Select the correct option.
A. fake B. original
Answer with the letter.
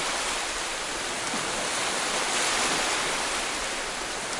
B